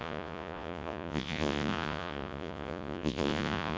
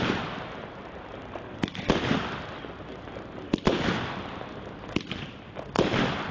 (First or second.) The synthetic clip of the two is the first